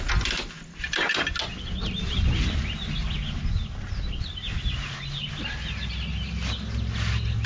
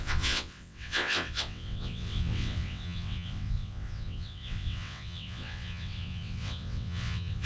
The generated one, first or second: second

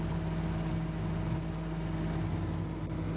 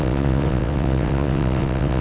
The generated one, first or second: second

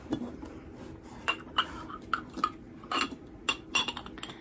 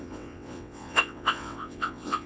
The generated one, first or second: second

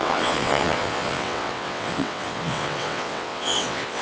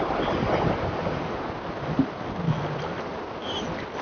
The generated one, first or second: first